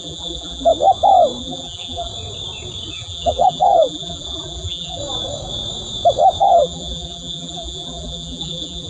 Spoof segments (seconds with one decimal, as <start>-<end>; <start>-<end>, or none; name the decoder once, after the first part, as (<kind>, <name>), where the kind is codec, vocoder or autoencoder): 0.0-0.7 (vocoder, BigVGAN v2); 1.4-2.1; 2.9-5.0; 6.4-8.9